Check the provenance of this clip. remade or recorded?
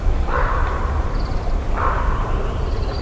recorded